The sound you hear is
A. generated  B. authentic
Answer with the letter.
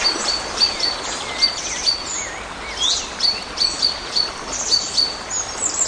B